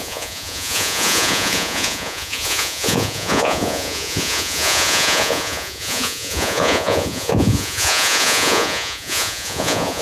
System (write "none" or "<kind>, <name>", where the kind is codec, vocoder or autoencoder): vocoder, Vocos